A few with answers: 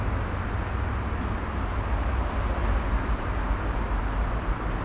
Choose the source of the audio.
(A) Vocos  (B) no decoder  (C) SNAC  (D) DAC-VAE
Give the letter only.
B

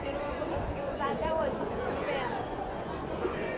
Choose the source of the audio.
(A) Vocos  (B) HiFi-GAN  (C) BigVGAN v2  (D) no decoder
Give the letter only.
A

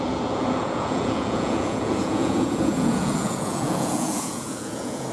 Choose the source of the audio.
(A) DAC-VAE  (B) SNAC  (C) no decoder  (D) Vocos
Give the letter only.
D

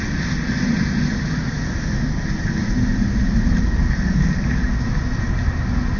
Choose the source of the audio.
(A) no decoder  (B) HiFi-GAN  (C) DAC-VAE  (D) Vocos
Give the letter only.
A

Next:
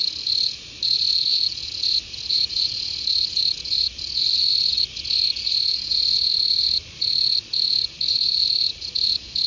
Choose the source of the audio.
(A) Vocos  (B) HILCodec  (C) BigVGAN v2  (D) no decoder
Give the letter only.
A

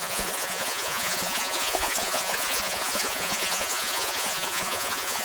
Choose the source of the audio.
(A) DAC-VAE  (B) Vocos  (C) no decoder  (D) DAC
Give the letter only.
B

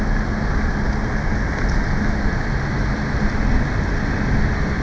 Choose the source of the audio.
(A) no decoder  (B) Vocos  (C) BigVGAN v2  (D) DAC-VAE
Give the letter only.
A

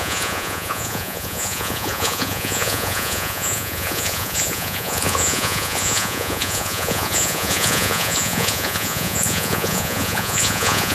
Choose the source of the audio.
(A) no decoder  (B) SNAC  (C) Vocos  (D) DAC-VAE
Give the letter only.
C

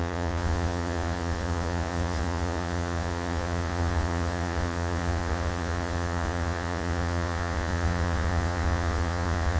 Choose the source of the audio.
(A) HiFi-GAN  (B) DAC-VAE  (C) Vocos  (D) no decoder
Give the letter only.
C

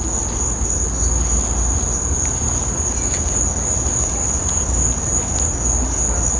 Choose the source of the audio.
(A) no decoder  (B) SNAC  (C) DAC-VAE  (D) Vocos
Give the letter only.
A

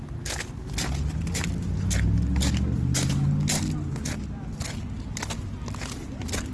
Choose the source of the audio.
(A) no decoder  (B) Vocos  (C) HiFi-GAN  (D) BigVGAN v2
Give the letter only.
A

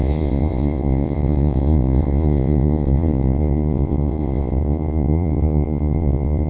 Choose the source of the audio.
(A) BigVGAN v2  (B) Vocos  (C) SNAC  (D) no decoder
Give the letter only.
B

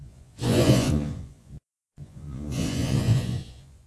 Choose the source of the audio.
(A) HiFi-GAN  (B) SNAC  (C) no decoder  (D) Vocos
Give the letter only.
D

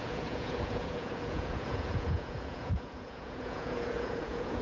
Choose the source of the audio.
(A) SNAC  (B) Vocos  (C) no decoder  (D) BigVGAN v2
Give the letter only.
B